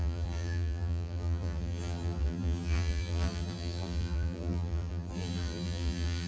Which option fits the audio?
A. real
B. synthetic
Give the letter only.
B